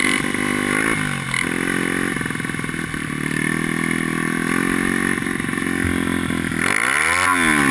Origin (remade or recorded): recorded